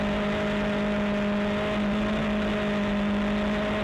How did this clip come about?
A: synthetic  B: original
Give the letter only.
B